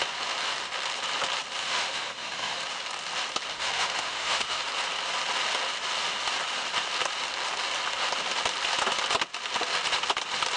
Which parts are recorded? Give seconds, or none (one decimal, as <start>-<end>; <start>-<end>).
0.0-1.6; 2.6-3.5; 4.6-10.6